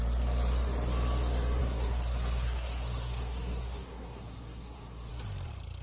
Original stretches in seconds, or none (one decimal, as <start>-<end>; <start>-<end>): 0.0-1.6; 5.1-5.8